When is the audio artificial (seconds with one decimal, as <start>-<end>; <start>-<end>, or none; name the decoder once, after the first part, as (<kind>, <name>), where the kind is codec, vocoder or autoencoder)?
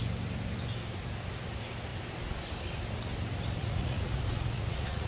3.6-5.1 (vocoder, Vocos)